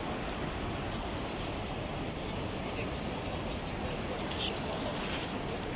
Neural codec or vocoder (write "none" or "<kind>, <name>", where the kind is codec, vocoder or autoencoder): none